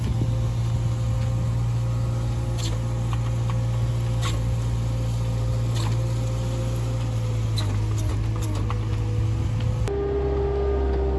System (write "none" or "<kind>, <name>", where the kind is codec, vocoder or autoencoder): none